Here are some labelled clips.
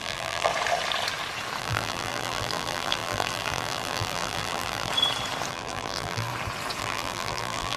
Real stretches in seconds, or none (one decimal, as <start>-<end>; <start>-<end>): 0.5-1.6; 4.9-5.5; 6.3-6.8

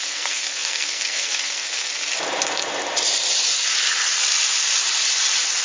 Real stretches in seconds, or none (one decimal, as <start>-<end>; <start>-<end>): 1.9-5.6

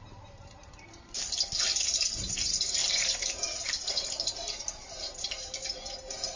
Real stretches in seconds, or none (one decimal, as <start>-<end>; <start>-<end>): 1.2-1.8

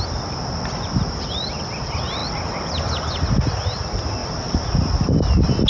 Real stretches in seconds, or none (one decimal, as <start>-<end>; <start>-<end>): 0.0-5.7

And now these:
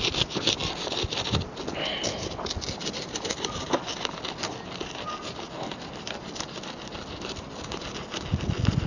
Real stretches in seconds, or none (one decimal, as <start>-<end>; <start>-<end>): 0.0-8.9

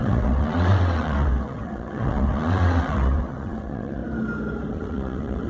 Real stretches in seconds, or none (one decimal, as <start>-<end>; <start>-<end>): 4.0-4.7

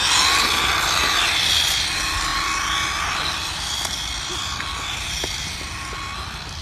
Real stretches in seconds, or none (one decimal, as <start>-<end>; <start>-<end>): 0.0-6.6

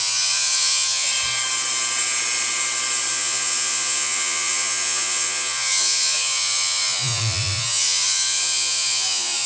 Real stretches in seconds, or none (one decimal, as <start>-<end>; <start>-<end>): 1.1-3.1